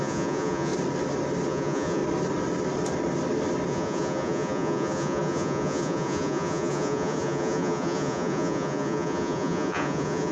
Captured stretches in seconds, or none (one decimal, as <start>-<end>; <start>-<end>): 0.7-1.5; 2.0-3.7